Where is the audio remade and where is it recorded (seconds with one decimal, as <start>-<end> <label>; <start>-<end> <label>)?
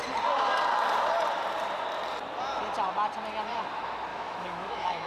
0.0-4.1 recorded; 4.1-5.1 remade